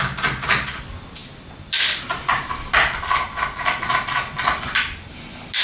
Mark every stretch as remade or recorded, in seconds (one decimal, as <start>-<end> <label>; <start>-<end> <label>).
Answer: 0.0-5.6 recorded